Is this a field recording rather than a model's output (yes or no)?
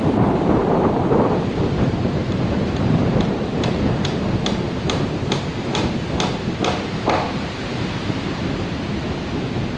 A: no